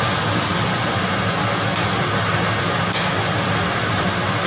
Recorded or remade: recorded